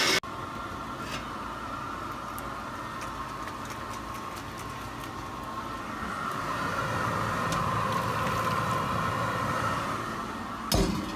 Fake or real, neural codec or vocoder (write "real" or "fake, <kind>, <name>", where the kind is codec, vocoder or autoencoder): real